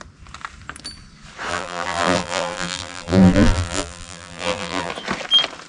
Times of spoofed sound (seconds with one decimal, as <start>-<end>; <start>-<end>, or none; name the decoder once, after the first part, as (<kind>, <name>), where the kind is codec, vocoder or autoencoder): 1.5-4.9 (vocoder, BigVGAN v2)